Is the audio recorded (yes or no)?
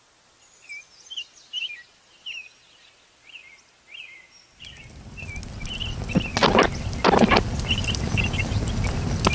yes